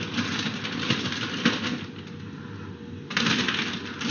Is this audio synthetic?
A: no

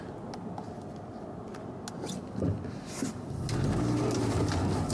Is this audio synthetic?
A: no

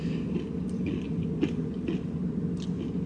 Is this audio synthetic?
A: no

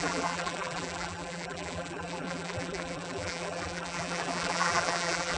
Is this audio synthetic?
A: yes